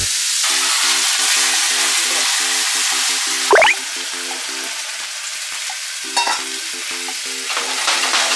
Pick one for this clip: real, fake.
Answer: real